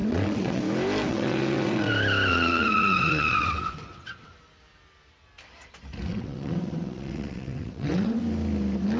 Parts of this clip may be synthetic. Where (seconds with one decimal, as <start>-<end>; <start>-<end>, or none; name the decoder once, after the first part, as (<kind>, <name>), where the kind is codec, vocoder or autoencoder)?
0.0-0.6 (vocoder, WaveNeXt); 1.1-1.9; 2.3-4.3; 6.1-8.2